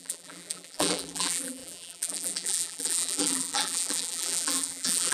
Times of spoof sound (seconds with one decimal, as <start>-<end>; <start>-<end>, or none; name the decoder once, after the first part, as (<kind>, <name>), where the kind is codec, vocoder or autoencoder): 0.0-5.1 (vocoder, BigVGAN v2)